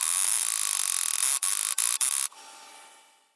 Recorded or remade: recorded